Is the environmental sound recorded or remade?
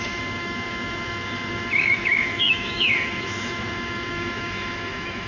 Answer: remade